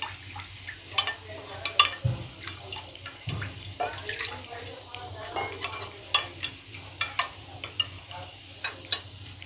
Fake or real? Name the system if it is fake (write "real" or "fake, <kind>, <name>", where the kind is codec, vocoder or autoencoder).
real